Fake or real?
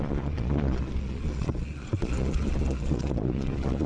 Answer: fake